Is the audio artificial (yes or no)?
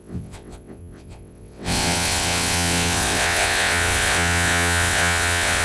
yes